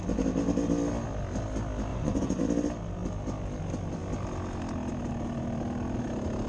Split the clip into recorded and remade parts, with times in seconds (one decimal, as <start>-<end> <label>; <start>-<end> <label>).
0.0-1.9 recorded; 1.9-2.4 remade; 2.4-6.5 recorded